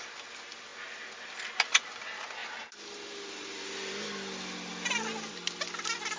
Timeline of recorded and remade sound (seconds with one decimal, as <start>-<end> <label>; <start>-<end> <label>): 0.0-6.2 recorded